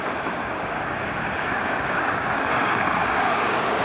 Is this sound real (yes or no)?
no